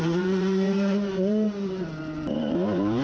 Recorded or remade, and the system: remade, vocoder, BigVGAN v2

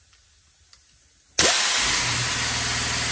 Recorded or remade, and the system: recorded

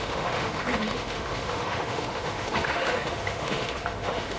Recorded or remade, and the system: remade, autoencoder, DAC-VAE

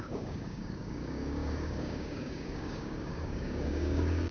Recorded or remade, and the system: remade, codec, DAC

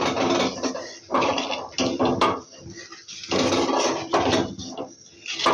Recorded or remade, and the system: recorded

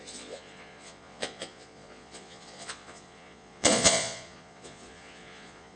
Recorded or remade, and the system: remade, vocoder, Vocos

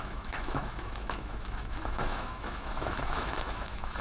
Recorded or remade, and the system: remade, autoencoder, DAC-VAE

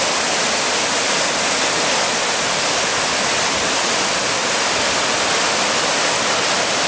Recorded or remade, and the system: recorded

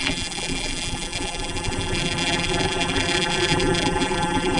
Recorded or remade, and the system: remade, vocoder, BigVGAN v2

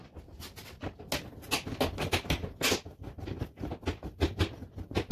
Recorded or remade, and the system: recorded